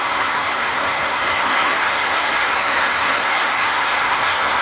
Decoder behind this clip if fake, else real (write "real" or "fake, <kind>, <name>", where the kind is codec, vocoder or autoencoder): fake, codec, SNAC